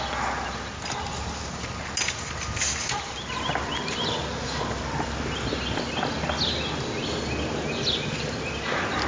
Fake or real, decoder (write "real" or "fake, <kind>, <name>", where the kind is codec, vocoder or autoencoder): real